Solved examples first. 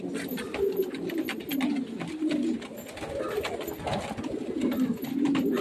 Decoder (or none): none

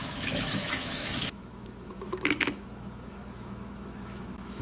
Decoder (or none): autoencoder, DAC-VAE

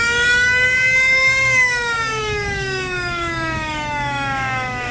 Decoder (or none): autoencoder, DAC-VAE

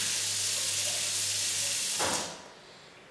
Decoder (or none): none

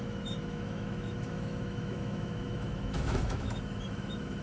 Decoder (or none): autoencoder, DAC-VAE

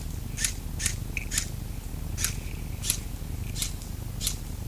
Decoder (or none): none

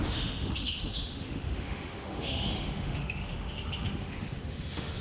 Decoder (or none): autoencoder, DAC-VAE